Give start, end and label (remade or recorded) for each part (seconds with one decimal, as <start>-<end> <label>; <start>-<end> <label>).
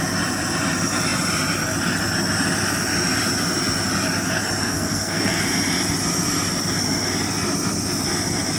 0.0-4.6 recorded; 4.6-5.4 remade; 5.4-8.6 recorded